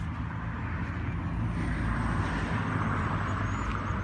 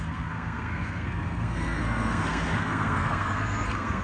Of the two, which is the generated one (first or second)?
second